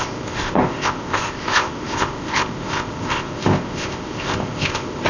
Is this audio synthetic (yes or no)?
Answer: yes